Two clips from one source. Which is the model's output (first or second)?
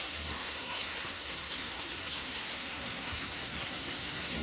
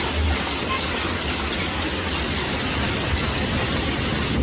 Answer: first